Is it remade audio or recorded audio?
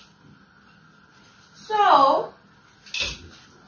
recorded